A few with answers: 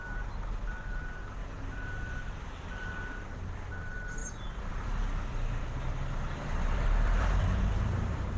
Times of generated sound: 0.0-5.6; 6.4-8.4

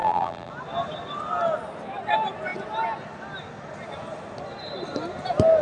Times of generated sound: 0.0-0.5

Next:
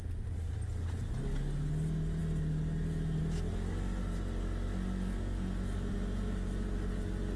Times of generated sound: none